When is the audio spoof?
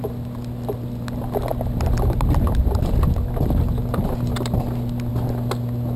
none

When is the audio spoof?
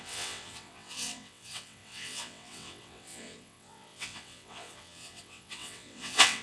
0.0-6.4 (vocoder, WaveNeXt)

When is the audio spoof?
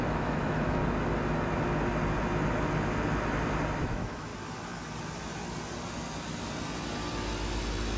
0.0-0.8 (autoencoder, DAC-VAE); 3.8-4.3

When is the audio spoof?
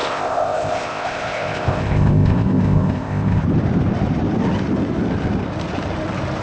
0.0-3.4 (codec, ZipCodec)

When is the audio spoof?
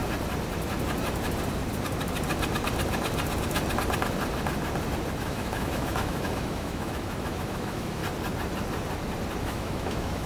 5.2-8.0 (autoencoder, DAC-VAE); 9.4-10.3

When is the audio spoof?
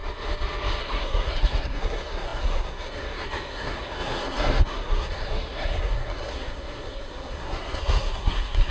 0.8-8.7 (codec, SNAC)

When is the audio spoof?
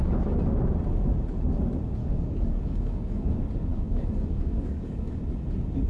2.0-3.3 (codec, DAC); 3.7-5.2